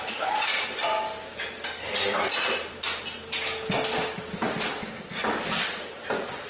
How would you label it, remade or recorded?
recorded